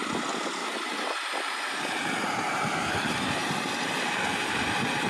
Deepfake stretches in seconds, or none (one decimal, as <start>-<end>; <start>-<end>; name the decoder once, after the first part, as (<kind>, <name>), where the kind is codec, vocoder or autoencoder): none